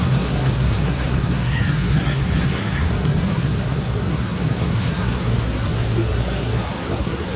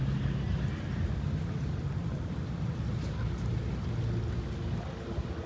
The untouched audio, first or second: second